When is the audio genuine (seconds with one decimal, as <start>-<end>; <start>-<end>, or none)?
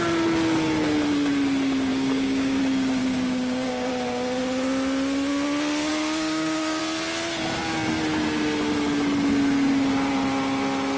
0.0-1.9; 2.6-3.0; 3.9-5.9; 6.8-11.0